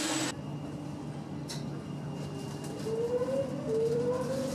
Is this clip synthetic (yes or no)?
no